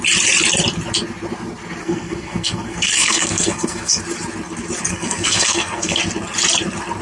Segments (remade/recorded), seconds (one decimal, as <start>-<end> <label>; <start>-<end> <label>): 0.0-1.8 recorded; 1.8-4.0 remade; 4.0-4.9 recorded; 4.9-6.0 remade; 6.0-7.0 recorded